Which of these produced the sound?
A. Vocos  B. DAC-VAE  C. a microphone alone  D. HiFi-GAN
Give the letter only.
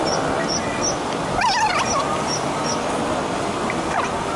C